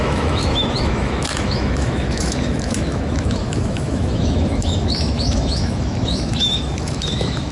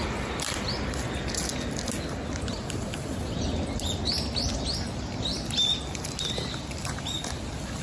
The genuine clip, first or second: second